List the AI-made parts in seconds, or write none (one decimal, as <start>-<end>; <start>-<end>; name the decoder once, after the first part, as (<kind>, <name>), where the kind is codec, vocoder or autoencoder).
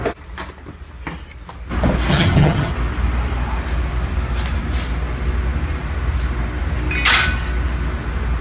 2.1-2.7 (vocoder, HiFi-GAN)